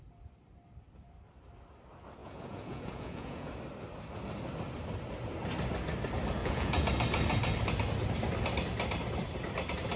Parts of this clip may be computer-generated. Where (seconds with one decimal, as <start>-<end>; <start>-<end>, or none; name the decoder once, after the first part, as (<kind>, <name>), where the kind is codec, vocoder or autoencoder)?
2.2-3.5 (vocoder, Vocos); 6.4-6.9